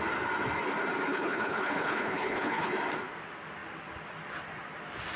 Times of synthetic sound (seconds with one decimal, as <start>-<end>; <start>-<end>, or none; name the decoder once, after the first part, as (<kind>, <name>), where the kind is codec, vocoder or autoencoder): 1.1-2.7 (codec, HILCodec)